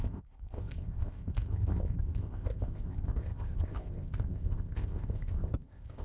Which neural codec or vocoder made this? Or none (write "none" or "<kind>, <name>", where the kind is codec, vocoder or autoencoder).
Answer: codec, ZipCodec